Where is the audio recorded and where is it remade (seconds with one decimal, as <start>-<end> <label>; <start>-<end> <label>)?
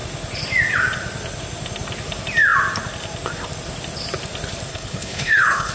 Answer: 0.0-4.7 recorded; 4.7-5.7 remade